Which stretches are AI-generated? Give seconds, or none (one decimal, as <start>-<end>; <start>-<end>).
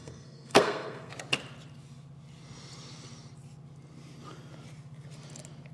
0.0-1.1